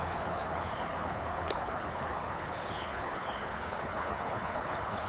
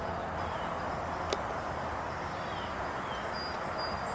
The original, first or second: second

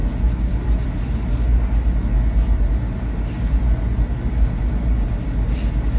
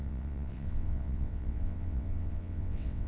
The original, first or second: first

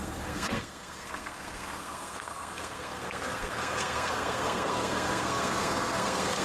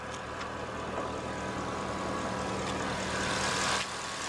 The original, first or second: second